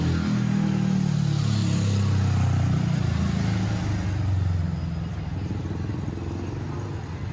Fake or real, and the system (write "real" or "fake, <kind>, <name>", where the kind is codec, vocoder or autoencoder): real